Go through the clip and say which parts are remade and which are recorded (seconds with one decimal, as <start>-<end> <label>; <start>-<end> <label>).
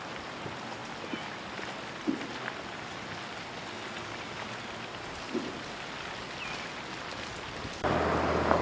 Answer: 0.0-8.6 recorded